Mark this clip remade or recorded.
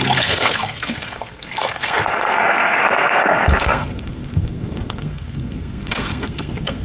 remade